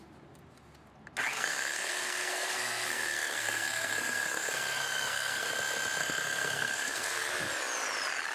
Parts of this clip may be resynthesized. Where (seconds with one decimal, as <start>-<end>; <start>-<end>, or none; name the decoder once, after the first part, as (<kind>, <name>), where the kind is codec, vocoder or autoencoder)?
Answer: 1.3-5.5 (codec, SNAC); 6.0-7.3